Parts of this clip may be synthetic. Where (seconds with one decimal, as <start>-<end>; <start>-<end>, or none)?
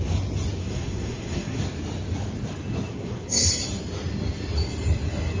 0.6-1.6; 2.9-3.5